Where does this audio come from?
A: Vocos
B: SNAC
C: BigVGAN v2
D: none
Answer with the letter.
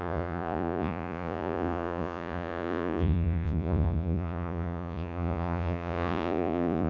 A